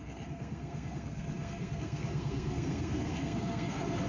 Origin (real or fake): fake